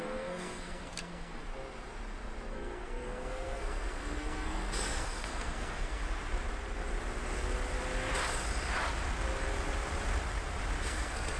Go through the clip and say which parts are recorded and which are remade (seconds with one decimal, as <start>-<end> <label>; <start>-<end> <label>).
0.0-1.4 remade; 1.4-2.5 recorded; 2.5-6.0 remade; 6.0-10.8 recorded; 10.8-11.4 remade